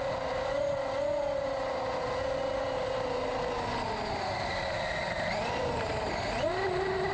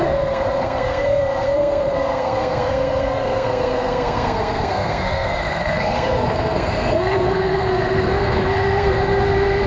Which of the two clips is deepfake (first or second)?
second